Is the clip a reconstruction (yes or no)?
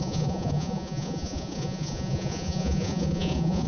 yes